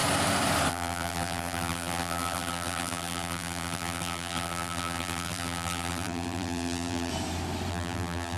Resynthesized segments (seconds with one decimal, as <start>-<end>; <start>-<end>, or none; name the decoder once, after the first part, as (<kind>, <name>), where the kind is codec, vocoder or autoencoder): 0.7-7.1 (vocoder, BigVGAN v2); 7.7-8.4